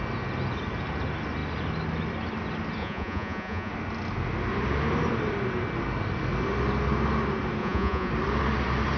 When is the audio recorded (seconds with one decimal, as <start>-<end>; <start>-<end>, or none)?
0.0-2.8; 3.7-7.6; 8.1-9.0